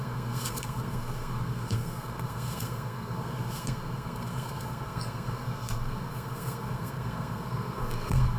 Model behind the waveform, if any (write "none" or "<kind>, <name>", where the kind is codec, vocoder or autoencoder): codec, SNAC